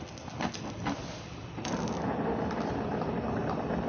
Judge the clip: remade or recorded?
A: recorded